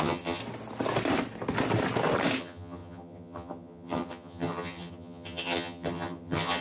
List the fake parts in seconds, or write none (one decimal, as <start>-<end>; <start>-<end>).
0.0-0.4; 2.4-6.6

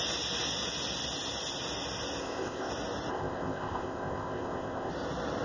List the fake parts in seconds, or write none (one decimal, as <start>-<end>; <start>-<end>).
2.2-2.7; 3.1-4.9

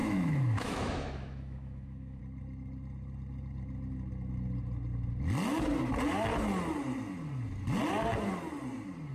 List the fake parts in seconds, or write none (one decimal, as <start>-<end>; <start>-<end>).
0.0-2.2

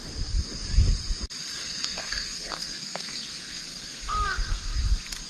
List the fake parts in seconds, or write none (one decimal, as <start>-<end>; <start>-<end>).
1.6-4.8

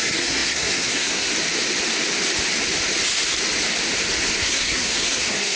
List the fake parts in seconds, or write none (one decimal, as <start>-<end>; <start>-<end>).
0.0-1.3; 4.4-5.6